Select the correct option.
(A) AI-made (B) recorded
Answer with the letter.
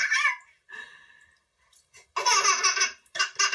B